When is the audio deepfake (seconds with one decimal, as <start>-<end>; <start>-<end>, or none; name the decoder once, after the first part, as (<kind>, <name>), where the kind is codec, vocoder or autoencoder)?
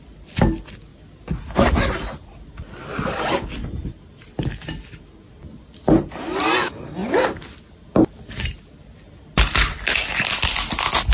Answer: none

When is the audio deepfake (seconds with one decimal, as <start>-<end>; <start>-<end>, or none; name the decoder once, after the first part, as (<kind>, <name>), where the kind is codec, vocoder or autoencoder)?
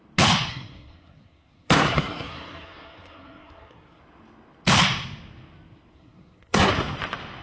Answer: 0.5-4.0 (codec, SNAC); 5.9-6.7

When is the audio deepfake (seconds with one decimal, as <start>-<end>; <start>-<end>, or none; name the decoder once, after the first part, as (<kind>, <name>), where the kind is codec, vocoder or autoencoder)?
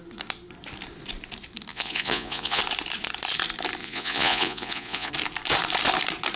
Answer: 1.7-2.6 (vocoder, Vocos); 3.8-5.1